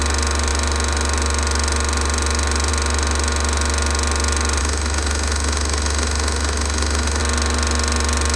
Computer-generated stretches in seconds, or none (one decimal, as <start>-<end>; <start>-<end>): 4.6-7.2